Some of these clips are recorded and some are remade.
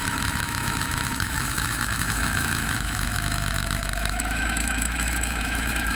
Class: remade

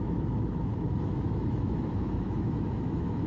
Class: remade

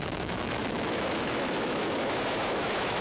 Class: remade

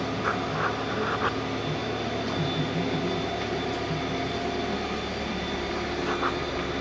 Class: recorded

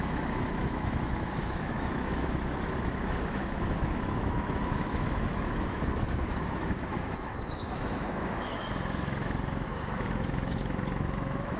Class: remade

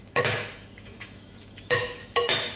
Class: remade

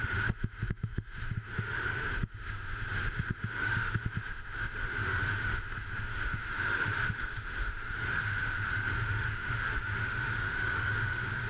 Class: remade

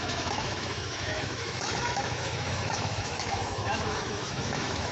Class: remade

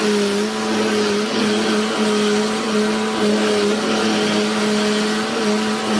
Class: recorded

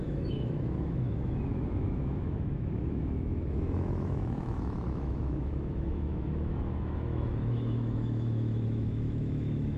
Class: remade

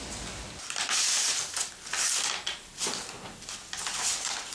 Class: recorded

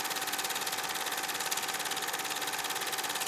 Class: recorded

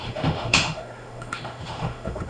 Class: remade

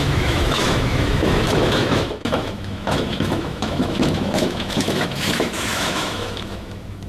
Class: remade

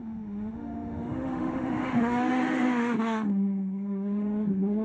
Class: remade